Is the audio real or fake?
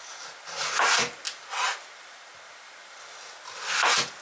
real